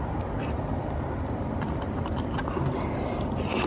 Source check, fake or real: real